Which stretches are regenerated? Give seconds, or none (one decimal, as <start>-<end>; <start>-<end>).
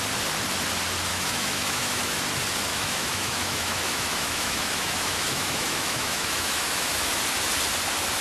1.1-2.2; 2.7-7.2